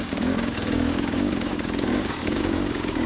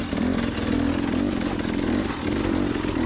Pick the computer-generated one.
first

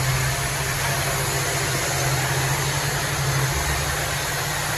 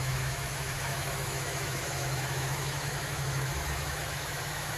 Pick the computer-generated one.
second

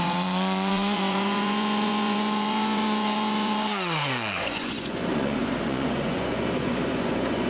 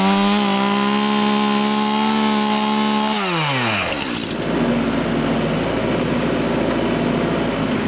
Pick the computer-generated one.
first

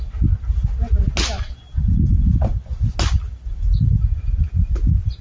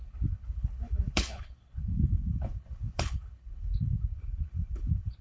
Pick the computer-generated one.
second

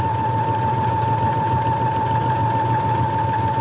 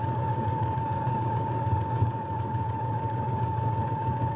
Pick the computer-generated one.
second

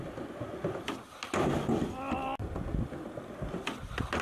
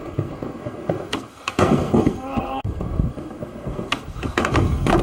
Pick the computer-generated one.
second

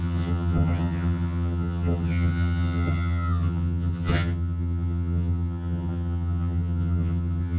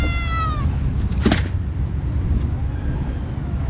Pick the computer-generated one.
first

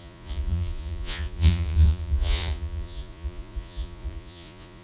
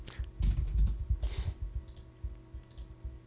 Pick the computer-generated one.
first